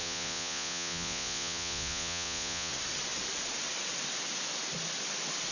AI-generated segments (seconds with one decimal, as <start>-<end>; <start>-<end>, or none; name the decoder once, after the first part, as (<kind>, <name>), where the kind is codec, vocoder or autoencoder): 0.0-2.7 (vocoder, Vocos)

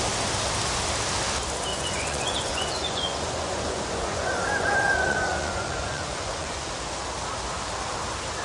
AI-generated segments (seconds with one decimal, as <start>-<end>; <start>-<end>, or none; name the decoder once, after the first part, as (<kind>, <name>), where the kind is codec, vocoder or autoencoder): 1.7-6.7 (vocoder, Vocos)

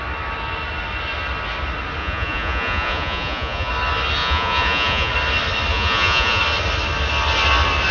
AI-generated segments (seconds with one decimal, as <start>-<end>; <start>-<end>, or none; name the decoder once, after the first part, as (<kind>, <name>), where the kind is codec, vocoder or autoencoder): 2.0-3.7 (vocoder, Vocos); 4.2-5.1; 5.7-6.4

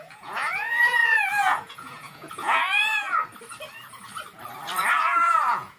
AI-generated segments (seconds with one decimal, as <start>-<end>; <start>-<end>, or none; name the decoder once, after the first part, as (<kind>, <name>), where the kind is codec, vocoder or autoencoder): 0.0-3.2 (vocoder, Vocos); 5.3-5.8

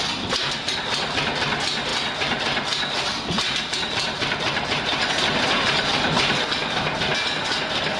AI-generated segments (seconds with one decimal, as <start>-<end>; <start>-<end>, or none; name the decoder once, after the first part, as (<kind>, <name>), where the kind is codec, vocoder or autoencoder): none

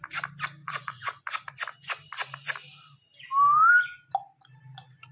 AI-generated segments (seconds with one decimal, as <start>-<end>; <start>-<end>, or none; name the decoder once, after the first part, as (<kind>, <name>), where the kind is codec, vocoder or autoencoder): 0.6-1.2 (vocoder, Vocos)

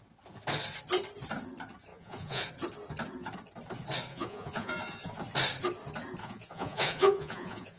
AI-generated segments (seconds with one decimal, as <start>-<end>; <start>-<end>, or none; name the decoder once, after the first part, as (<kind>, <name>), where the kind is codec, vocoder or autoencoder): 1.9-2.5 (vocoder, Vocos); 4.1-5.1; 6.2-7.8

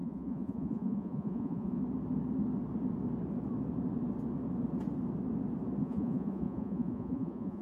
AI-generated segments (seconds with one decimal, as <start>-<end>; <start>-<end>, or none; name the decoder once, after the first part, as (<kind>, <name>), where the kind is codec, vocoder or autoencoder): 0.0-1.8 (vocoder, Vocos); 5.8-7.6